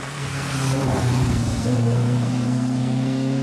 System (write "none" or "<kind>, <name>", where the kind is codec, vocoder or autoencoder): codec, SNAC